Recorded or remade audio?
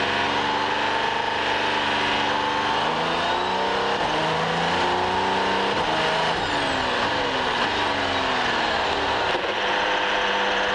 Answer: recorded